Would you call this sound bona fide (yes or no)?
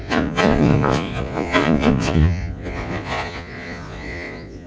no